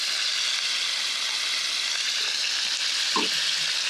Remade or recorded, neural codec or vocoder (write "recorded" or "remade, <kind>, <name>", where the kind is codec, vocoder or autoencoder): recorded